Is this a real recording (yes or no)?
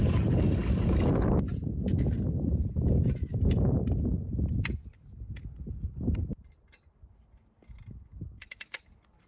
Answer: yes